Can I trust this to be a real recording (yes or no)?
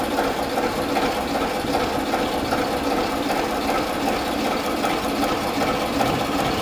yes